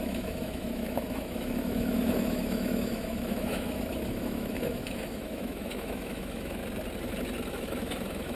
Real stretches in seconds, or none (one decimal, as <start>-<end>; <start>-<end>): 6.6-7.5